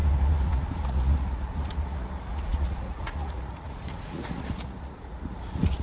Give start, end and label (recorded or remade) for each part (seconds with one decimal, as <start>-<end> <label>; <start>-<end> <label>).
0.0-5.8 remade